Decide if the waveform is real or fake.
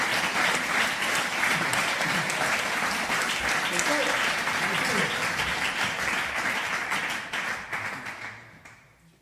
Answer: real